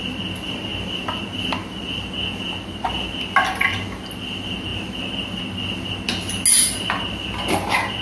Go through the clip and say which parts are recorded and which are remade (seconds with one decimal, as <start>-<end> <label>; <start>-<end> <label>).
0.0-8.0 recorded